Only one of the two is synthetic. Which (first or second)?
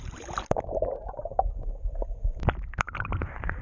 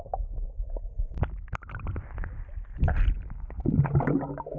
first